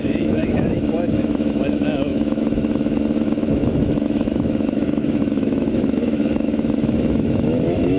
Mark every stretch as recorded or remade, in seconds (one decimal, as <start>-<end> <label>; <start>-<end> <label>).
0.0-8.0 remade